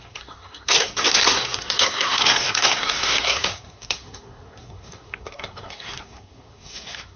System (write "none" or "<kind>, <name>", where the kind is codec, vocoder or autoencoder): codec, SNAC